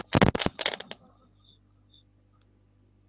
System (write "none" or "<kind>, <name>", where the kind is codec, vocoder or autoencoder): none